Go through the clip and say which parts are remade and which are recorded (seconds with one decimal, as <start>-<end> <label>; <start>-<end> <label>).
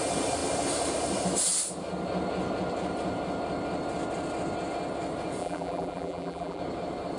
0.0-5.4 recorded; 5.4-6.6 remade; 6.6-7.2 recorded